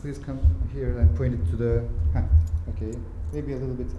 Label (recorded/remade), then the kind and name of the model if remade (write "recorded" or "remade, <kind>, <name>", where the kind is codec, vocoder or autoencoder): recorded